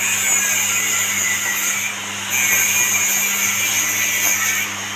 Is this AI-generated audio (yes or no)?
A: no